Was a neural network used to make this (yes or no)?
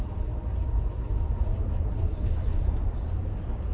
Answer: no